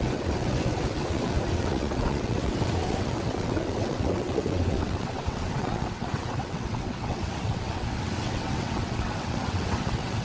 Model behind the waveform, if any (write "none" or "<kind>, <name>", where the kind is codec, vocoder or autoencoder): vocoder, WaveNeXt